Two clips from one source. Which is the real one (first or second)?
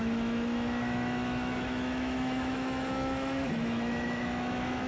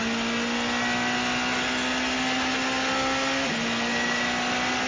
second